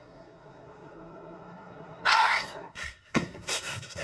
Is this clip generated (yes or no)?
yes